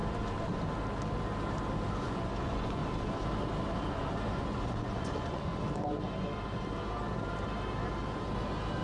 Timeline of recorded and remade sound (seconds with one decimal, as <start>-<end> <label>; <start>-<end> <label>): 0.0-2.0 recorded; 2.0-2.8 remade; 2.8-3.9 recorded; 3.9-5.5 remade; 5.5-8.8 recorded